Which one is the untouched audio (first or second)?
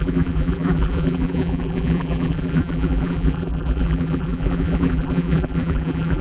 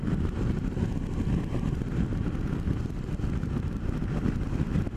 second